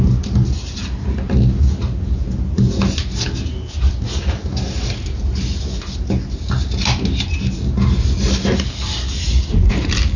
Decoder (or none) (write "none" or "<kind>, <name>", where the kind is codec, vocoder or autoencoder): none